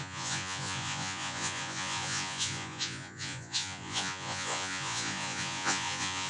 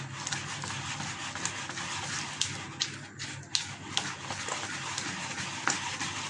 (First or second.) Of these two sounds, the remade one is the first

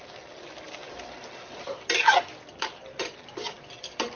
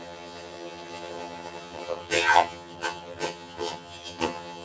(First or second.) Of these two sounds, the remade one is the second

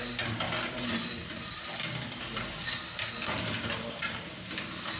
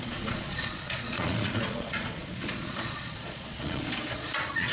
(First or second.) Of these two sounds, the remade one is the second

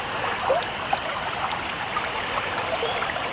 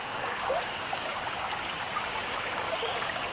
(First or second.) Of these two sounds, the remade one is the second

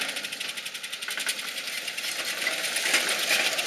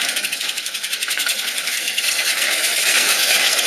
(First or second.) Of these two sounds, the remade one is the second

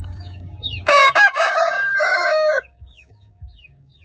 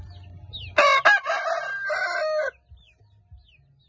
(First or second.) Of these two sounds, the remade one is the first